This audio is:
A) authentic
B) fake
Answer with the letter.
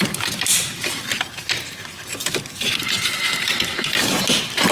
A